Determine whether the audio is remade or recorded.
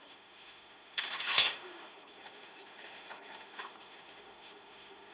remade